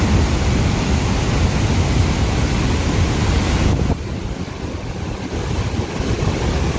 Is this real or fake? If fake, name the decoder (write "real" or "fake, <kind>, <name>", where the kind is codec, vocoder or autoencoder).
real